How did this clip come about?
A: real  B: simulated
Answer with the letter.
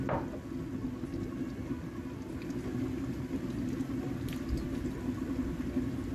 A